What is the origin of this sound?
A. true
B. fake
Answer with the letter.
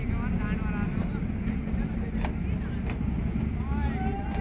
A